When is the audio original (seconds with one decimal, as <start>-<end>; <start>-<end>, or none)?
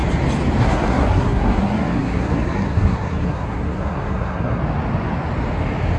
0.0-0.6; 4.6-6.0